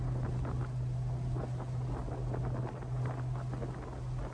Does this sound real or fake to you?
real